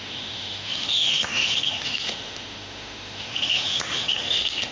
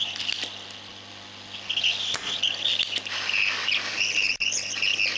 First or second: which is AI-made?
first